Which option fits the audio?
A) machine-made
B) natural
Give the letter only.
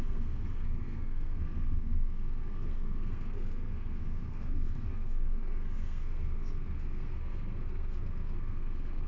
A